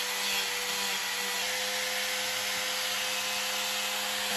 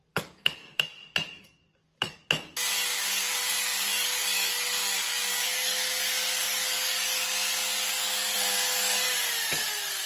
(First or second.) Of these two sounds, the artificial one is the second